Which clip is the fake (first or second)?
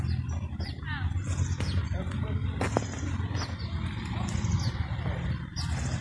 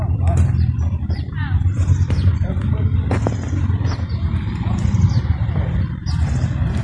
second